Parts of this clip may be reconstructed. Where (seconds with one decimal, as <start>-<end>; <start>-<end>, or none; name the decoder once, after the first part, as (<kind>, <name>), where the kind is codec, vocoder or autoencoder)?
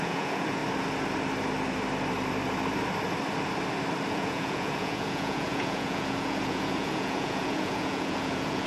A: 0.0-0.6 (vocoder, Vocos); 4.1-8.7